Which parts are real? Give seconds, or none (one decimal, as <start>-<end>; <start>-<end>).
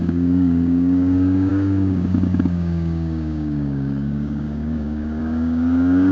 none